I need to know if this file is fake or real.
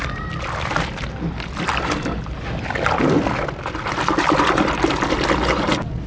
real